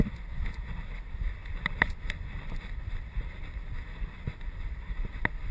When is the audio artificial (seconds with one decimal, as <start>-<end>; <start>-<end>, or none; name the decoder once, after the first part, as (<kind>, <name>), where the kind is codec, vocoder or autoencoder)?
1.4-4.7 (vocoder, BigVGAN v2)